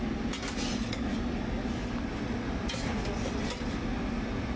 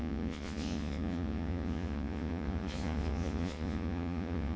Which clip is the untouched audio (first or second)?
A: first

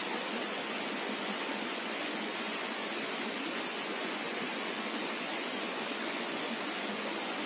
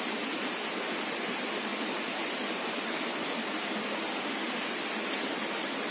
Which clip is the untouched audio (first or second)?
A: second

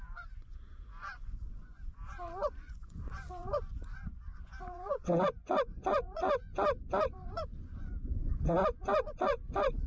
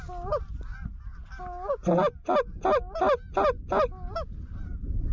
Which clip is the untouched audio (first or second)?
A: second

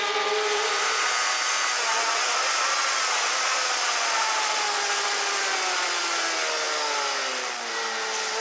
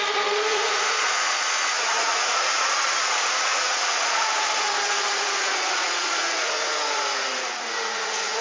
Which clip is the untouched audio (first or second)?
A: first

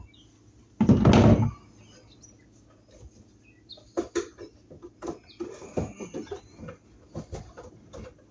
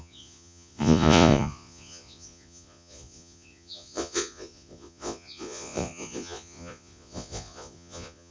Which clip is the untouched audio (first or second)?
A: first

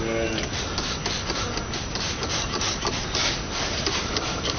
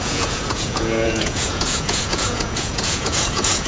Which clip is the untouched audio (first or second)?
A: first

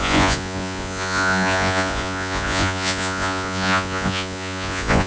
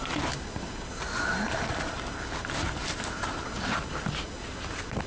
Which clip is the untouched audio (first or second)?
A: second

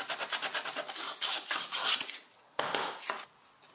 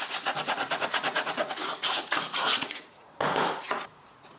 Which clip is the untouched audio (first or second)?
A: first